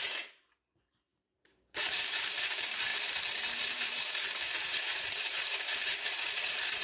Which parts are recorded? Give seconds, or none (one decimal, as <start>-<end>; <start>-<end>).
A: none